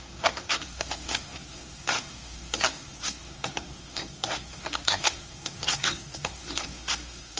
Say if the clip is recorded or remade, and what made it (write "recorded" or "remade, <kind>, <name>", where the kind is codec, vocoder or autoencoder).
remade, codec, SNAC